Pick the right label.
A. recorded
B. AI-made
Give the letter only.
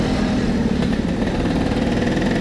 A